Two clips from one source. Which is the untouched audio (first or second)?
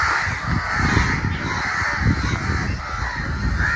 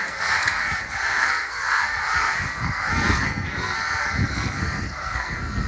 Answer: first